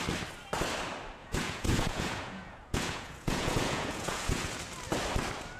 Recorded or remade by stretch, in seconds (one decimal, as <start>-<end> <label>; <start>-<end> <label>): 0.0-1.2 recorded; 1.2-4.5 remade; 4.5-5.6 recorded